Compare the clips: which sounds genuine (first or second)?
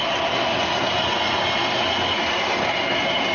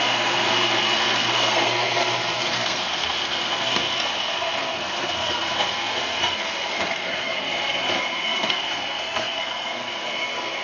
first